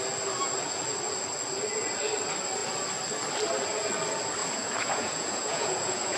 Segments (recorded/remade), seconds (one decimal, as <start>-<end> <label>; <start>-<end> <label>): 0.0-4.4 recorded; 4.4-6.2 remade